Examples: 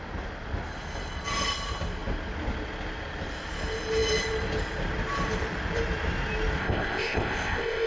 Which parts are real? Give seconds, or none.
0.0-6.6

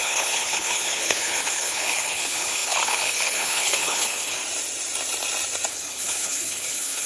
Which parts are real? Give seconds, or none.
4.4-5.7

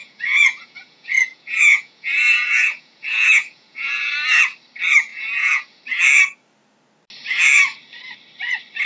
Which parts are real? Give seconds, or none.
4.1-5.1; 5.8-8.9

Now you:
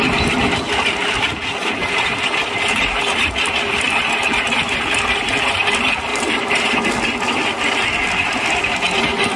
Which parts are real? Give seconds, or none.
0.0-1.6; 3.3-6.1; 6.7-9.4

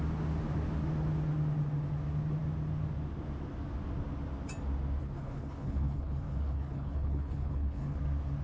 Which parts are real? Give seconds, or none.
0.0-5.0; 8.0-8.4

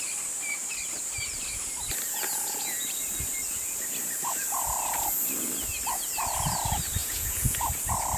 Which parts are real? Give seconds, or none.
0.0-7.0; 7.7-8.2